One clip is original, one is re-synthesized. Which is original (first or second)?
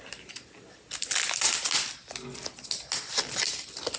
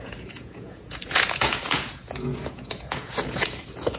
first